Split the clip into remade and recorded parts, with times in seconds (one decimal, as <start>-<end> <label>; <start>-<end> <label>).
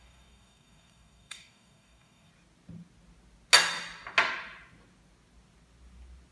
0.0-2.3 remade; 2.3-6.3 recorded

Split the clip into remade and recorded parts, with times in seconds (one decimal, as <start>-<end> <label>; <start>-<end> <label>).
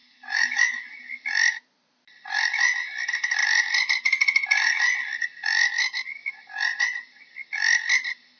0.0-0.9 remade; 0.9-8.4 recorded